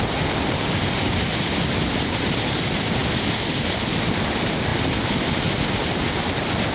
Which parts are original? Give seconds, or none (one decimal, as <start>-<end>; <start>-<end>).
4.7-5.8